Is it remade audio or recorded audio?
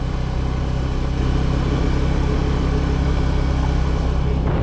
recorded